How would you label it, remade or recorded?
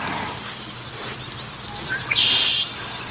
remade